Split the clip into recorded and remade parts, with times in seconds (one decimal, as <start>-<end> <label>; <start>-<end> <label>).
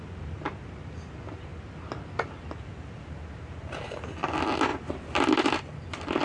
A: 0.0-6.2 recorded